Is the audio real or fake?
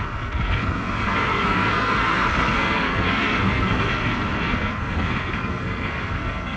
fake